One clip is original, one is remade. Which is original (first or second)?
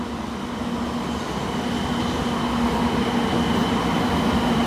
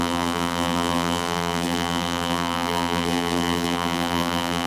first